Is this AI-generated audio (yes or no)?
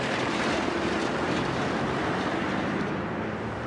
yes